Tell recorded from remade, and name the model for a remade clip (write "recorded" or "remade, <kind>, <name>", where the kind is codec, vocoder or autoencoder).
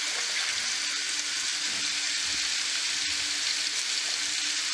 recorded